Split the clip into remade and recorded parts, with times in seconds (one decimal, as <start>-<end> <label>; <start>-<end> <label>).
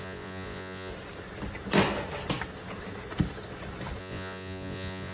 0.0-0.9 remade; 0.9-4.0 recorded; 4.0-5.1 remade